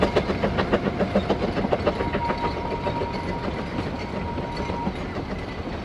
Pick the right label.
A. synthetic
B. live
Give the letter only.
B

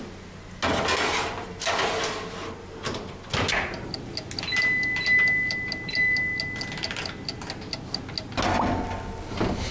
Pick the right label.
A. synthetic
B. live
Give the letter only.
B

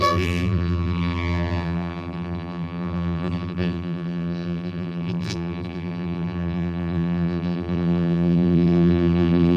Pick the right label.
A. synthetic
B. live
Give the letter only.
A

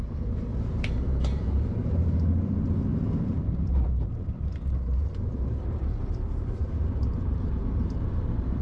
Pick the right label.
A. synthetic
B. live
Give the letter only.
A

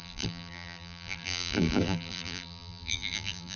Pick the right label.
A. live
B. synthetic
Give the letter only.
B